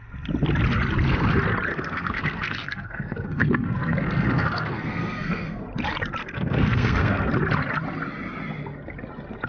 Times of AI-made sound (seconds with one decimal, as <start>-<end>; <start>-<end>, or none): 1.7-5.6; 6.2-7.3